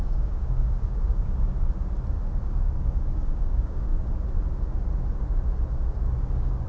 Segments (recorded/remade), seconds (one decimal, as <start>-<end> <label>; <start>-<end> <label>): 0.0-1.5 remade; 1.5-2.4 recorded; 2.4-3.9 remade; 3.9-6.2 recorded; 6.2-6.7 remade